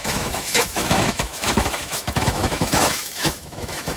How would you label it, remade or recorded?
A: remade